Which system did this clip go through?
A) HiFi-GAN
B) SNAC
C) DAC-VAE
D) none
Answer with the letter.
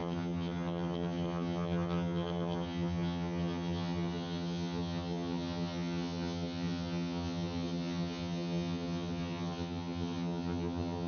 A